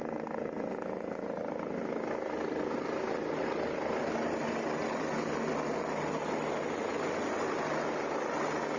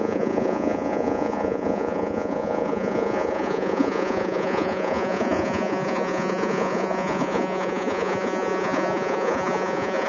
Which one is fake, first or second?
second